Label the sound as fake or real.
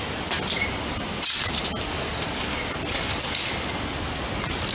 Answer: real